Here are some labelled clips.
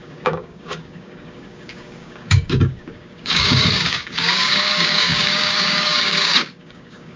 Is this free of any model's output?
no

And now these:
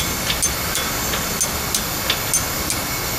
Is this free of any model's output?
yes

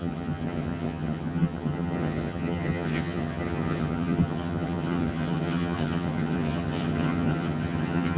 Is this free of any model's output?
no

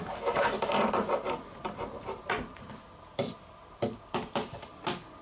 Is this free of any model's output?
yes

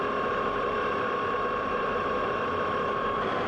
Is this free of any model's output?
no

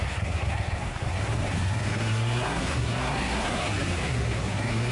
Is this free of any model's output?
no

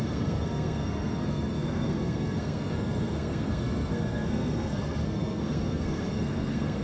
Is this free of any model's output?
no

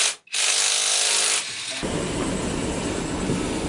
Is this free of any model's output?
yes